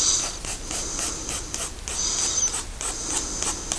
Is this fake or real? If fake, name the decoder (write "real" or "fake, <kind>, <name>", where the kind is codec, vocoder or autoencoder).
real